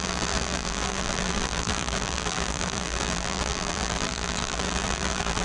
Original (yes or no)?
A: no